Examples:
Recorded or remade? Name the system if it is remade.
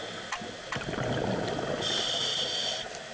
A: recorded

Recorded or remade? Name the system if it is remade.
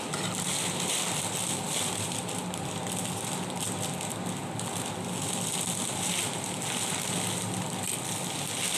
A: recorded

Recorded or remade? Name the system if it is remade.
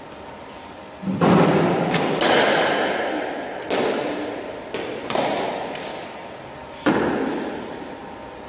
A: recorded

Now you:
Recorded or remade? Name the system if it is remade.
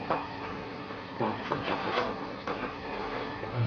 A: remade, codec, SNAC